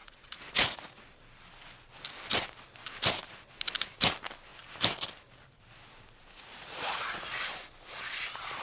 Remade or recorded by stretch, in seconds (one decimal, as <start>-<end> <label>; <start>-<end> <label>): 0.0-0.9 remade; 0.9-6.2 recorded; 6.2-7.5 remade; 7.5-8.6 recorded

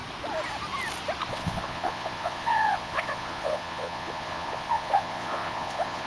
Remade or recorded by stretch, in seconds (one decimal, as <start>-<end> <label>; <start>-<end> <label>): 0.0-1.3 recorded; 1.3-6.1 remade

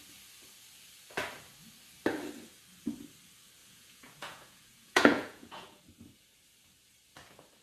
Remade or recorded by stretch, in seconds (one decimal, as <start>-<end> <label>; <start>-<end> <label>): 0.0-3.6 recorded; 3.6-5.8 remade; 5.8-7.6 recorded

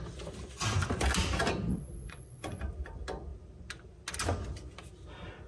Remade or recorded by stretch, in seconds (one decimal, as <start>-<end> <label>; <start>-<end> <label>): 0.0-1.7 recorded; 1.7-2.6 remade; 2.6-5.5 recorded

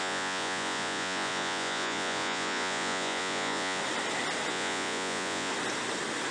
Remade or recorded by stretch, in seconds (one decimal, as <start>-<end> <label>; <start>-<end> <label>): 0.0-3.8 remade; 3.8-4.5 recorded; 4.5-5.5 remade; 5.5-6.3 recorded